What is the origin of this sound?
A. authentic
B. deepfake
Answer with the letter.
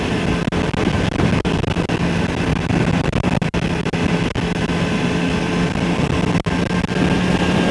A